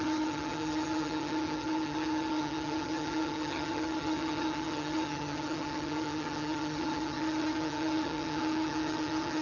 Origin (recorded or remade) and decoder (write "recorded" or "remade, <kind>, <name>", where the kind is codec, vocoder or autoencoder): remade, vocoder, HiFi-GAN